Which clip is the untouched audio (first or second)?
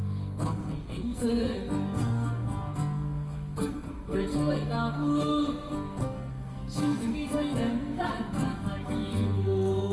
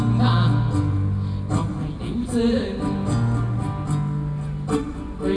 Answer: second